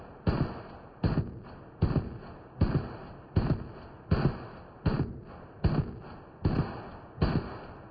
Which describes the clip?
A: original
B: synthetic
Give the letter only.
A